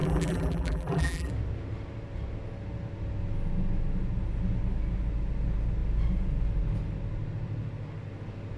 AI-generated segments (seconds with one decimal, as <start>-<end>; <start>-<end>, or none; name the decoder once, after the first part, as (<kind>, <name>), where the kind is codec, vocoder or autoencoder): 0.0-1.3 (vocoder, BigVGAN v2)